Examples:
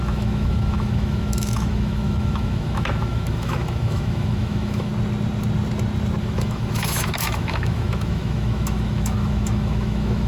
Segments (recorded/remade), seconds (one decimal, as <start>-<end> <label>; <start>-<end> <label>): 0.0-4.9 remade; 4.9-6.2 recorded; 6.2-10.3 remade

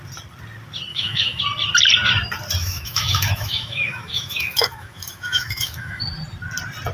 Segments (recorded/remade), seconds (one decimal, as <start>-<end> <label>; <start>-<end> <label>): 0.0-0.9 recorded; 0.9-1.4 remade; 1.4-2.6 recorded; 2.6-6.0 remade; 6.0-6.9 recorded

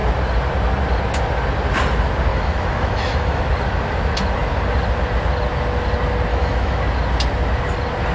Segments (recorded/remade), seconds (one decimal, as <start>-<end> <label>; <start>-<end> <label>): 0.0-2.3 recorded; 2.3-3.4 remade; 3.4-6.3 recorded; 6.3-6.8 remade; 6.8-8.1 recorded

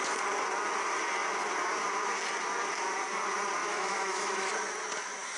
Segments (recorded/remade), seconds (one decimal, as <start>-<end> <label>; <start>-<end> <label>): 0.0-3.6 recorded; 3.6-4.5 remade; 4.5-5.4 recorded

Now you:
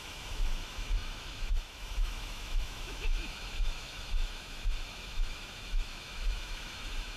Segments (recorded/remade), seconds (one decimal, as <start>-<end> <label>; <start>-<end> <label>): 0.0-7.2 remade

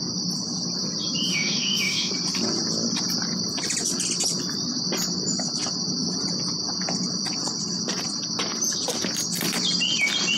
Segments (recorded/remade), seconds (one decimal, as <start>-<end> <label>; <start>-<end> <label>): 0.0-1.3 recorded; 1.3-2.1 remade; 2.1-10.4 recorded

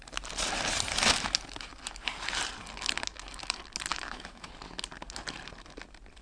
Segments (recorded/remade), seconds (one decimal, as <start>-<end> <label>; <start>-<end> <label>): 0.0-3.9 recorded; 3.9-4.5 remade; 4.5-6.2 recorded